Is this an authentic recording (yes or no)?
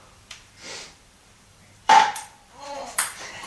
no